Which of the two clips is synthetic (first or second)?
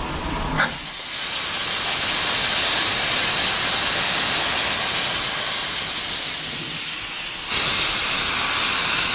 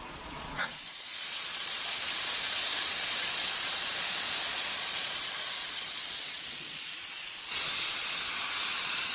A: second